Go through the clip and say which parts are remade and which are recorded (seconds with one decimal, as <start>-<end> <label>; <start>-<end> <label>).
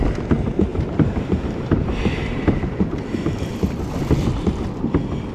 0.0-0.7 recorded; 0.7-3.5 remade; 3.5-5.3 recorded